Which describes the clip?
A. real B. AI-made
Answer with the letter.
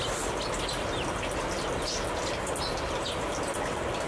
A